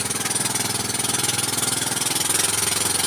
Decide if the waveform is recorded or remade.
recorded